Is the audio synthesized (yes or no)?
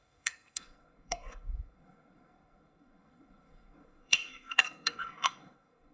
yes